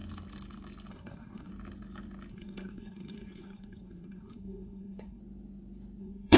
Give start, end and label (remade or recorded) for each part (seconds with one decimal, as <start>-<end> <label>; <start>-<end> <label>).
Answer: 0.0-0.9 recorded; 0.9-1.5 remade; 1.5-2.3 recorded; 2.3-5.2 remade; 5.2-6.0 recorded; 6.0-6.4 remade